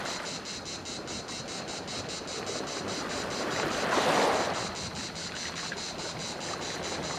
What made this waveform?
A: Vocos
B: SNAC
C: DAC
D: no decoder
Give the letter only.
D